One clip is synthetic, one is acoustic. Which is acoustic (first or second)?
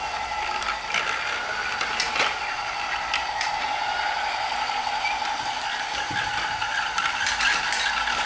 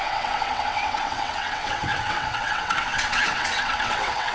first